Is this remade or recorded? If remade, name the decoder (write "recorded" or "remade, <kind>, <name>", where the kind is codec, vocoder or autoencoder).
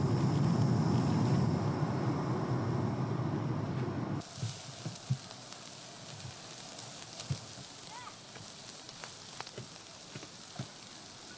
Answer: recorded